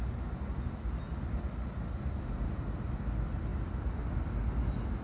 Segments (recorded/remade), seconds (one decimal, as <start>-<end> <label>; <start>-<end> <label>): 0.0-5.0 recorded